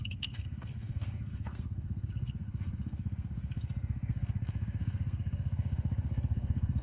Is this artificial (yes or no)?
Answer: yes